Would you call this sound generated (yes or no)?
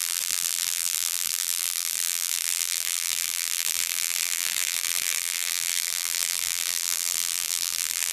yes